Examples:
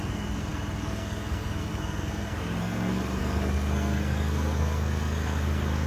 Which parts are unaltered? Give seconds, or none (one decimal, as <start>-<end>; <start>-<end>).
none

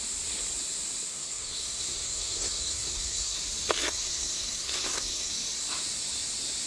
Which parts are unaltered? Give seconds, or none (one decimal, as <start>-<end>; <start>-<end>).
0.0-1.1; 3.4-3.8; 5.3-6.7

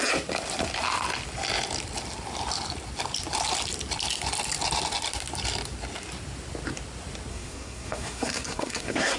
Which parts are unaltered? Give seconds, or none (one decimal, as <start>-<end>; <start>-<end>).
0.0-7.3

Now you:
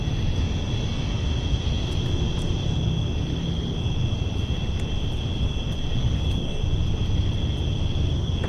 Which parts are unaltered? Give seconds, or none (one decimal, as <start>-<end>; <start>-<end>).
0.0-6.0; 6.6-8.5

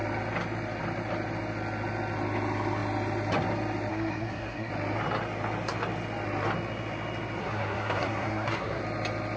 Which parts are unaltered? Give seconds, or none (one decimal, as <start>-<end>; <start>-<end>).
0.0-3.9; 4.7-7.4; 8.8-9.4

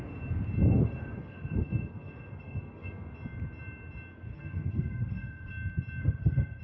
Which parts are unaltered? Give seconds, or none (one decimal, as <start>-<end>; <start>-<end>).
0.0-0.7; 3.1-4.3; 5.5-6.0

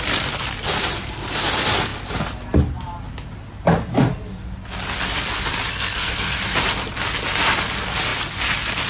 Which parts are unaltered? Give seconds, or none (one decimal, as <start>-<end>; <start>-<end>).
0.0-5.7; 6.4-8.9